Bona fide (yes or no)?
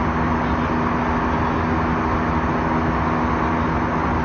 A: yes